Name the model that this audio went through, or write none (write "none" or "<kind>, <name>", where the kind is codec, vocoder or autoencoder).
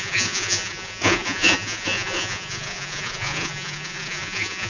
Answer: vocoder, Vocos